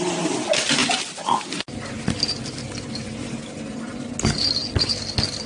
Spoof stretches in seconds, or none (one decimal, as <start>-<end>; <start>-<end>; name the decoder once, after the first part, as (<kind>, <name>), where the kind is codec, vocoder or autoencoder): none